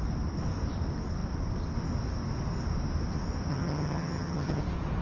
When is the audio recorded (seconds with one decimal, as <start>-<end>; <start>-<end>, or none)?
0.0-3.5; 4.6-5.0